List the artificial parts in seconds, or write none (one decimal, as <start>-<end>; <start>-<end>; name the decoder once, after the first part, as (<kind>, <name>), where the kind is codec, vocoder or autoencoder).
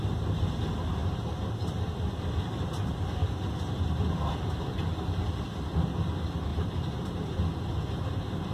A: 1.0-1.8 (vocoder, BigVGAN v2); 6.5-7.6